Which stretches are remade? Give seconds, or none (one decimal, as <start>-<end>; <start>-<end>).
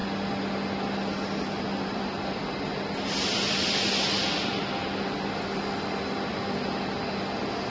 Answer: none